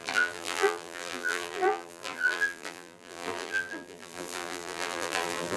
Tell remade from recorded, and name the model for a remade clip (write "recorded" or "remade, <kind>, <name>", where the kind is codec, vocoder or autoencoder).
remade, vocoder, BigVGAN v2